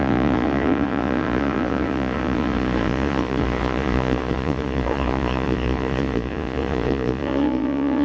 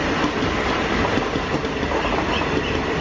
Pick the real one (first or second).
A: second